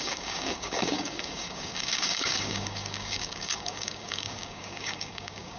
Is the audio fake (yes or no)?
yes